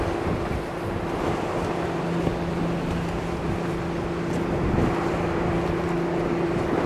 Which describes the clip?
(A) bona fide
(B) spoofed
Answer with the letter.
A